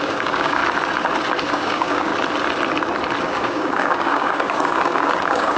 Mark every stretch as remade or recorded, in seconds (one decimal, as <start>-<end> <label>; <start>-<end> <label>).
0.0-0.6 remade; 0.6-1.5 recorded; 1.5-2.1 remade; 2.1-3.2 recorded; 3.2-5.6 remade